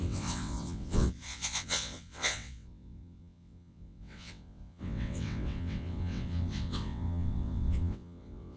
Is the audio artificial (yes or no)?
yes